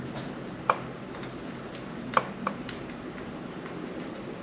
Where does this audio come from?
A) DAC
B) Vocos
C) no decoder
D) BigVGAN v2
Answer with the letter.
C